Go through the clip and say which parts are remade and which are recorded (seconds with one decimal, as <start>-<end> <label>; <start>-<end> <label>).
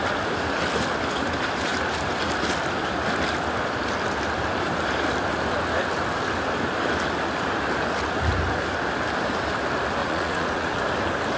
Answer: 0.0-10.0 recorded; 10.0-10.8 remade; 10.8-11.4 recorded